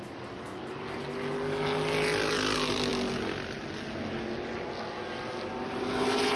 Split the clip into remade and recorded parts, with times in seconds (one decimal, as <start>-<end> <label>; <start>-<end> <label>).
0.0-6.4 recorded